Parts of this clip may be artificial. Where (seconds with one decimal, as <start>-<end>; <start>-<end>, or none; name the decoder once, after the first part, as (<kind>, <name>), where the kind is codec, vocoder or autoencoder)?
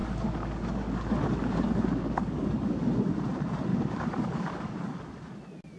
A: 0.0-2.9 (codec, DAC); 3.7-5.0